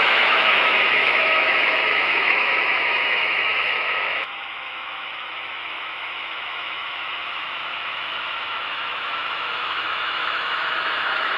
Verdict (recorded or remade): remade